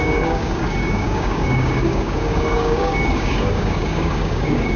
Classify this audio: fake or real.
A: fake